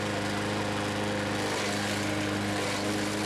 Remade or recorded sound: recorded